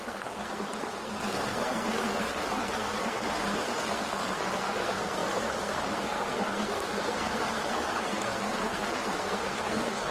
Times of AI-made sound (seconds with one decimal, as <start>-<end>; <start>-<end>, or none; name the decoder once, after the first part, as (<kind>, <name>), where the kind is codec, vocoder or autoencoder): 0.0-10.1 (codec, SNAC)